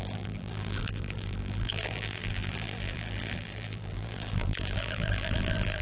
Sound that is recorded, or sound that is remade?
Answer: remade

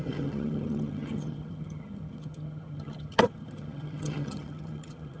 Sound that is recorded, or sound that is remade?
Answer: remade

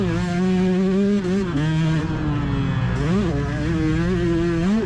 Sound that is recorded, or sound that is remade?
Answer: recorded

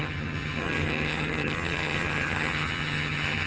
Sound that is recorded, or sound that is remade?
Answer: remade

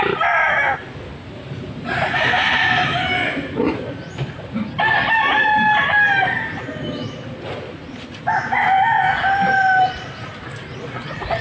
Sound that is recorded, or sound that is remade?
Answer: recorded